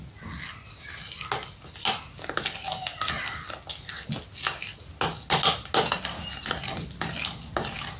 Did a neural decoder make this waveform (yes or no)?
no